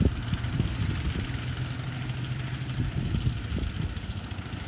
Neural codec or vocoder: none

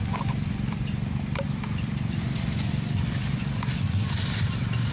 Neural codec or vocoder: vocoder, BigVGAN v2